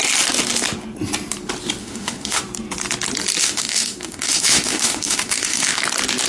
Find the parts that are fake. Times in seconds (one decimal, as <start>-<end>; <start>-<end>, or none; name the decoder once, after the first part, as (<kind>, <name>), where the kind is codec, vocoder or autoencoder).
1.8-2.4 (autoencoder, DAC-VAE); 3.4-5.8